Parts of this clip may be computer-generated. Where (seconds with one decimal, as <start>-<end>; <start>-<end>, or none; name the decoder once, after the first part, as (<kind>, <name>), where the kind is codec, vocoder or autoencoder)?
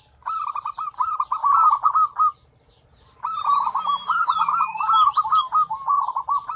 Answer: 1.4-1.9 (vocoder, BigVGAN v2)